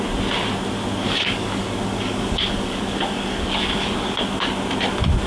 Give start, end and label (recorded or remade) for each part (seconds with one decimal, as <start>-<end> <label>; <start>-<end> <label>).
0.0-1.0 recorded; 1.0-4.2 remade; 4.2-5.3 recorded